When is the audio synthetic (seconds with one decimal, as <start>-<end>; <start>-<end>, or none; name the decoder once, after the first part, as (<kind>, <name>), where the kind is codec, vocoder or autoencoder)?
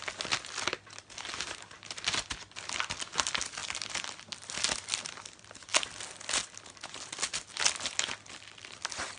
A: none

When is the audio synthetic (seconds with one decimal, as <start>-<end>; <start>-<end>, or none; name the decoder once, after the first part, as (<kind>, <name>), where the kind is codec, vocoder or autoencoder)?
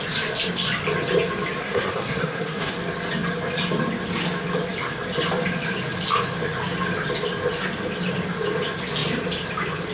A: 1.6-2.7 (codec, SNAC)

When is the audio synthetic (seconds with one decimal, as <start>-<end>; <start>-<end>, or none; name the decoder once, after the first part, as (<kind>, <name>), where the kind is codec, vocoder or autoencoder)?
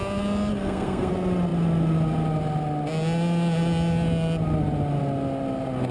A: 0.5-1.1 (codec, SNAC)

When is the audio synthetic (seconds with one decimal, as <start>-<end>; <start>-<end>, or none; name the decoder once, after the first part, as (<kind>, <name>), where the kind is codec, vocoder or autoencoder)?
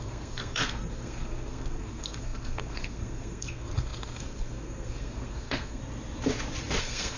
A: 0.0-5.8 (codec, SNAC); 6.8-7.2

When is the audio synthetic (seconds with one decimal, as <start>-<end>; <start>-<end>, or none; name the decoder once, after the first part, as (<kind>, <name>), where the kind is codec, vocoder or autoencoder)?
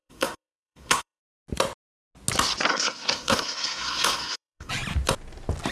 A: 0.0-1.2 (codec, SNAC); 2.7-4.7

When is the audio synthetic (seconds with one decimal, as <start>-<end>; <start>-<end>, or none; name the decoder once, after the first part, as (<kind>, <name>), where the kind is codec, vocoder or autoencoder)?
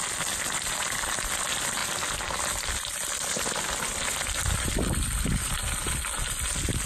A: none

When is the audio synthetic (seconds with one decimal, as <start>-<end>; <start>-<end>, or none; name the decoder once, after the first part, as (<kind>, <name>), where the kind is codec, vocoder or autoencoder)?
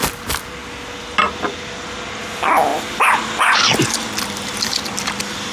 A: none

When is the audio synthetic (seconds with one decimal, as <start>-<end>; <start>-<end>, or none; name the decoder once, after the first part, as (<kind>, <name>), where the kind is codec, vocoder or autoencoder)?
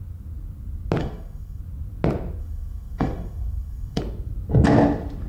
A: 1.0-1.6 (codec, SNAC); 2.4-4.0